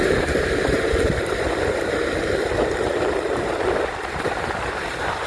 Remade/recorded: remade